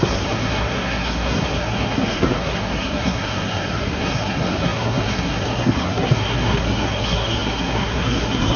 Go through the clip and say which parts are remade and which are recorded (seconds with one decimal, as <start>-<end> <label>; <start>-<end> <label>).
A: 0.0-8.6 remade